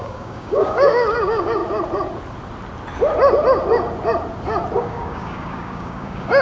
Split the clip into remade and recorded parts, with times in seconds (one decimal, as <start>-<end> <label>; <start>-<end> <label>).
0.0-1.6 remade; 1.6-4.8 recorded; 4.8-6.4 remade